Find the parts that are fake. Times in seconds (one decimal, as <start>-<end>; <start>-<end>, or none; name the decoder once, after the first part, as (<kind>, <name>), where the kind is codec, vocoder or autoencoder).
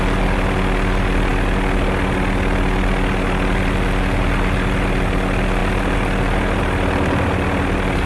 none